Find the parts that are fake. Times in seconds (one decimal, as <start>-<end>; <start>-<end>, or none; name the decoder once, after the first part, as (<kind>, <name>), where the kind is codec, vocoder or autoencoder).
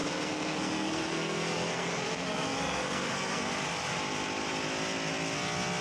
0.0-3.5 (codec, SNAC)